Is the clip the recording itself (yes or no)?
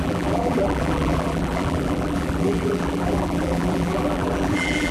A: no